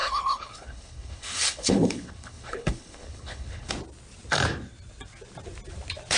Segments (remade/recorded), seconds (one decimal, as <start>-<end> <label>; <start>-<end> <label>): 0.0-3.7 remade; 3.7-6.2 recorded